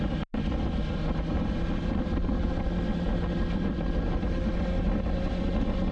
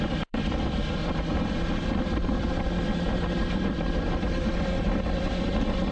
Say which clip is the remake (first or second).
second